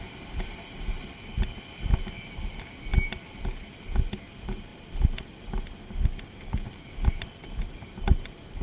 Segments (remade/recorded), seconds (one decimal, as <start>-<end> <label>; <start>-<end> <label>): 0.0-8.6 recorded